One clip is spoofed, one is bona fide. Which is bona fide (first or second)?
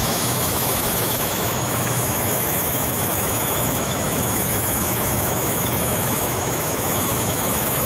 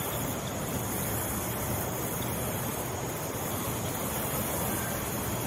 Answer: second